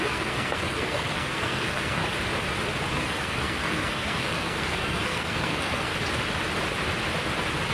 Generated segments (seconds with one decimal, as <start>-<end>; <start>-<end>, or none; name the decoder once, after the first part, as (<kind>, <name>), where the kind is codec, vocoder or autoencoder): 0.0-2.0 (codec, SNAC); 2.9-5.9